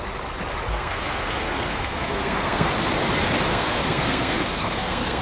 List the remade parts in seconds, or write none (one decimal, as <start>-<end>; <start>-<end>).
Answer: 0.7-2.7; 3.5-5.2